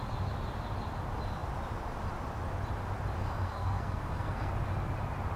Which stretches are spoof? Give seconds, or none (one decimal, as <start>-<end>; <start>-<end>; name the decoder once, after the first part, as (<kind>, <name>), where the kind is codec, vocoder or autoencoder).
3.2-4.5 (codec, SNAC)